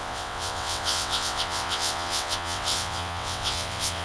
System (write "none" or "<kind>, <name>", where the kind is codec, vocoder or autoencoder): vocoder, WaveNeXt